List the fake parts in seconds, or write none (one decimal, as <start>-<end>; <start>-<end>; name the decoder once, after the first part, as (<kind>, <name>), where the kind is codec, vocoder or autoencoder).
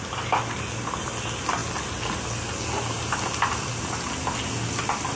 none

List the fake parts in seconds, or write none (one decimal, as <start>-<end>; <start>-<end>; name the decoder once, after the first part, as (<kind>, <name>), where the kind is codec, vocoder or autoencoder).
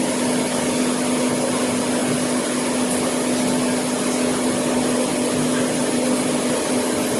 none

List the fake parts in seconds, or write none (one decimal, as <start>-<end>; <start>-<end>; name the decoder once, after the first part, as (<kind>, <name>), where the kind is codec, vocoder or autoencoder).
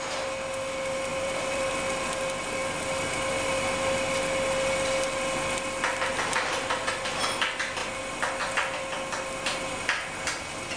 1.1-1.8 (vocoder, BigVGAN v2)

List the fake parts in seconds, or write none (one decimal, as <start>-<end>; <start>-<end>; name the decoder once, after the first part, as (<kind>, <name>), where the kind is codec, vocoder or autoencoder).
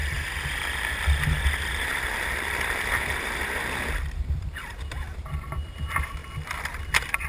4.4-6.2 (vocoder, BigVGAN v2); 6.8-7.3